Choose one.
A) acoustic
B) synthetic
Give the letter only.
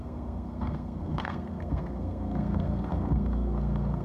B